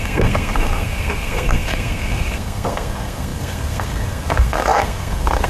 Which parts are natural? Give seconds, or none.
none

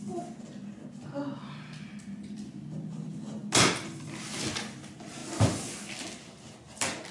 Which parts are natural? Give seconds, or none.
0.0-7.1

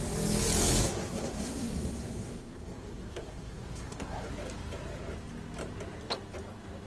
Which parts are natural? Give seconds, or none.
0.0-0.8; 4.3-6.9